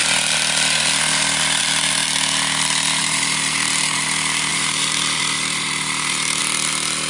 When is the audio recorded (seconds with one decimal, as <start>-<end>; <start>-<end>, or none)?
0.0-3.0; 4.0-4.5; 6.4-7.1